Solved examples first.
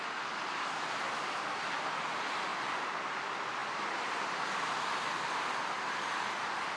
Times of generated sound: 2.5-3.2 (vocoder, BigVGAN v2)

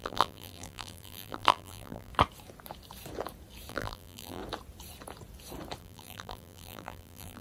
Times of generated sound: 0.0-2.1 (vocoder, BigVGAN v2); 3.7-4.4; 5.8-7.4

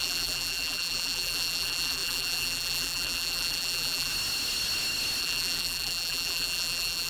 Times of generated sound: 0.0-4.1 (vocoder, BigVGAN v2); 5.2-7.1

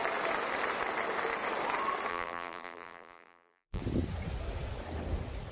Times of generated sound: 2.1-3.8 (vocoder, BigVGAN v2)

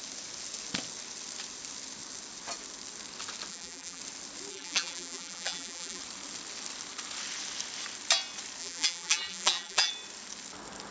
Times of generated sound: 3.5-4.0 (vocoder, BigVGAN v2); 4.5-6.0; 8.6-9.9